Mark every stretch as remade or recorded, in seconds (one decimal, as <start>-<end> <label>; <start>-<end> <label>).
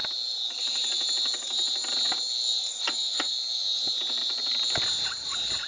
0.0-5.7 recorded